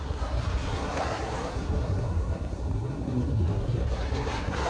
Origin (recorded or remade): remade